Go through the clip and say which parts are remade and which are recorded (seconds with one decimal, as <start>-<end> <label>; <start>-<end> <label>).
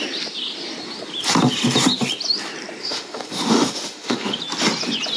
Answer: 0.0-2.8 recorded; 2.8-4.4 remade; 4.4-5.2 recorded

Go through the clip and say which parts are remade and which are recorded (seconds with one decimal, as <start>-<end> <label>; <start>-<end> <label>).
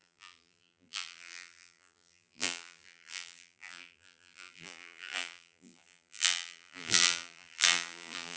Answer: 0.0-8.4 remade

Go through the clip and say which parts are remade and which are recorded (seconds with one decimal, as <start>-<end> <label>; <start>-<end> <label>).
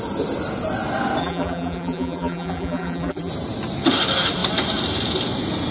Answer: 0.0-1.2 recorded; 1.2-3.3 remade; 3.3-5.7 recorded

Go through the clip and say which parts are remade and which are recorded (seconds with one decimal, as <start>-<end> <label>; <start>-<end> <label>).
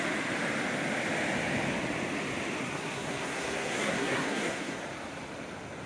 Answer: 0.0-2.6 recorded; 2.6-4.8 remade; 4.8-5.9 recorded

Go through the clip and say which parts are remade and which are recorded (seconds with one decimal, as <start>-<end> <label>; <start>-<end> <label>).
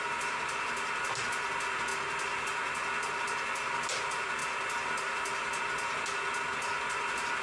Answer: 0.0-7.4 recorded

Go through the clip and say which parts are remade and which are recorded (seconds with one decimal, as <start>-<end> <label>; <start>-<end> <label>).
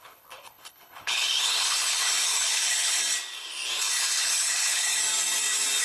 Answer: 0.0-3.0 remade; 3.0-3.8 recorded; 3.8-5.0 remade; 5.0-5.8 recorded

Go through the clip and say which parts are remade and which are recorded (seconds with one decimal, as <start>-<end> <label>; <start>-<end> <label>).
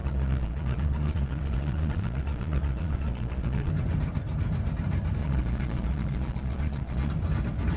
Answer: 0.0-3.7 remade; 3.7-5.2 recorded; 5.2-7.1 remade; 7.1-7.8 recorded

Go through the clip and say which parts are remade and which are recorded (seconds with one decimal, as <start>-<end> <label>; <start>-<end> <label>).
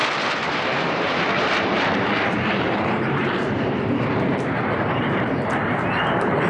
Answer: 0.0-0.8 recorded; 0.8-6.5 remade